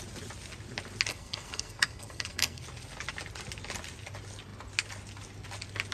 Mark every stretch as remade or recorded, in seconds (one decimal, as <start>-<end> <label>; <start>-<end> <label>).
0.0-1.1 recorded; 1.1-2.6 remade; 2.6-5.9 recorded